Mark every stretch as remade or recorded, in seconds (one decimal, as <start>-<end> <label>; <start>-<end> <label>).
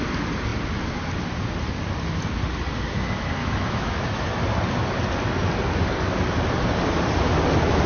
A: 0.0-3.4 recorded; 3.4-4.4 remade; 4.4-7.9 recorded